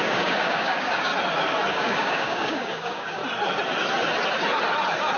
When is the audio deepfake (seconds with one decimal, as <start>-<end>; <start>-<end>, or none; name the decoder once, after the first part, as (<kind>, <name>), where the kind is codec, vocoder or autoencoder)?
0.0-1.1 (codec, DAC); 1.7-3.2